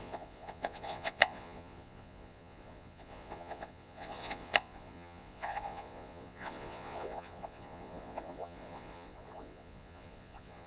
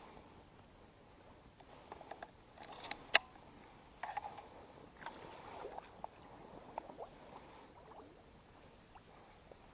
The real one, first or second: second